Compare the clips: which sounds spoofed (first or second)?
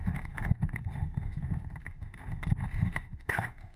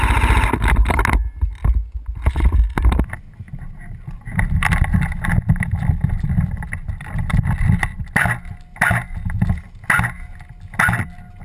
first